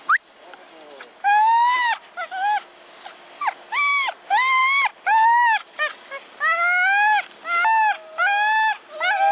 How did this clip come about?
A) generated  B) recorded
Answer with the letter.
B